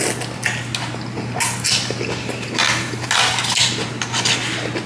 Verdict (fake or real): real